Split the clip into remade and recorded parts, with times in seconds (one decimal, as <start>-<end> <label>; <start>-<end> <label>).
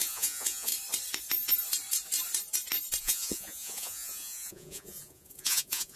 0.0-0.7 remade; 0.7-3.0 recorded; 3.0-6.0 remade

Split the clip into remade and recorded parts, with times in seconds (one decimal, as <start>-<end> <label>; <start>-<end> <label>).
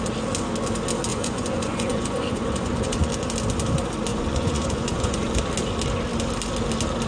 0.0-1.1 recorded; 1.1-3.1 remade; 3.1-4.1 recorded; 4.1-5.4 remade; 5.4-7.1 recorded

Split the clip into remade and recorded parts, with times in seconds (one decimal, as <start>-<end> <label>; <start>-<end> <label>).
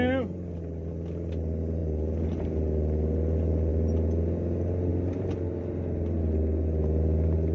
0.0-7.5 recorded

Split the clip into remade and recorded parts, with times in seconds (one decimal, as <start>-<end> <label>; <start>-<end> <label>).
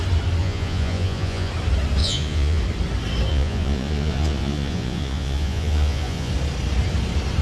0.0-0.4 recorded; 0.4-1.5 remade; 1.5-2.0 recorded; 2.0-2.6 remade; 2.6-3.3 recorded; 3.3-6.3 remade; 6.3-7.4 recorded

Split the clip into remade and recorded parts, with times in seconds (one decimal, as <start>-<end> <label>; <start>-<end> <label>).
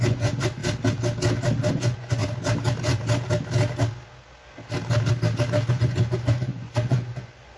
0.0-0.6 remade; 0.6-1.7 recorded; 1.7-2.2 remade; 2.2-5.7 recorded; 5.7-7.6 remade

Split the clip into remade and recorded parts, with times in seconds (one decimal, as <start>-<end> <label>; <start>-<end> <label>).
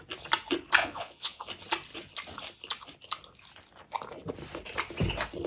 0.0-0.8 recorded; 0.8-1.4 remade; 1.4-5.5 recorded